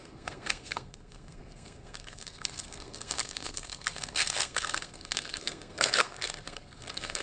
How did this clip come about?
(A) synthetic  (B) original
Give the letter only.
A